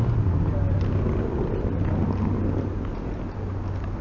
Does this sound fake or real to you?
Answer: real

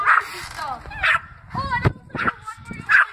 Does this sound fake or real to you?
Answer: fake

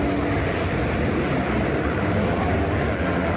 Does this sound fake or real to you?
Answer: real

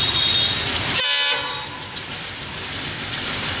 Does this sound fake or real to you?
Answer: real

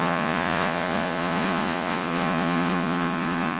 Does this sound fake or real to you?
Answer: fake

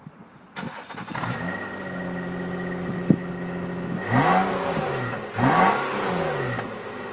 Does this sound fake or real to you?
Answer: real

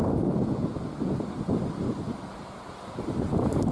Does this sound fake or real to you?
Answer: real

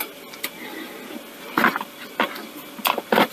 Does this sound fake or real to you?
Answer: real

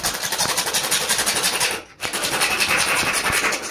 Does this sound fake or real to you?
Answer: fake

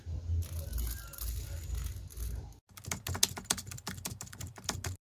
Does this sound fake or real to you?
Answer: real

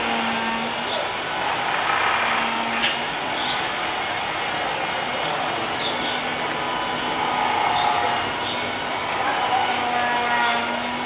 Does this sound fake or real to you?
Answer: real